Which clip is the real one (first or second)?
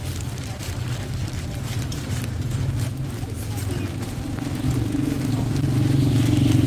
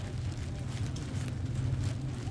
second